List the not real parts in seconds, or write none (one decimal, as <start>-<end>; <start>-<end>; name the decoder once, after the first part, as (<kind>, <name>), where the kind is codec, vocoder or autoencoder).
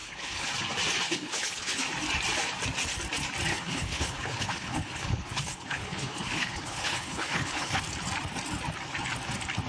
0.0-0.5 (codec, HILCodec); 1.1-1.8; 3.5-7.8